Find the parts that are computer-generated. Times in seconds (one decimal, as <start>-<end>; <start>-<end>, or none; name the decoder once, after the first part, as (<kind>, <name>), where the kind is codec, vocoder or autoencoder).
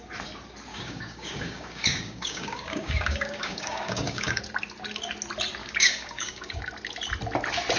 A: 0.7-4.4 (codec, DAC); 5.6-6.6